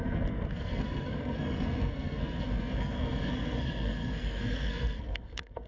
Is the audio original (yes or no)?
no